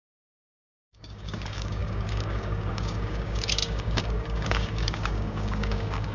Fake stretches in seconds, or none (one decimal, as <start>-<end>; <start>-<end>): 0.0-6.1